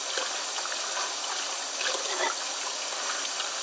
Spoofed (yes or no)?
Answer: no